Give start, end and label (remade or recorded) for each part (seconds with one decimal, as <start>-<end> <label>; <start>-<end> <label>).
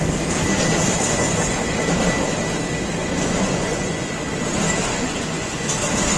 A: 0.0-1.1 recorded; 1.1-1.8 remade; 1.8-3.0 recorded; 3.0-4.1 remade; 4.1-4.8 recorded; 4.8-5.7 remade; 5.7-6.2 recorded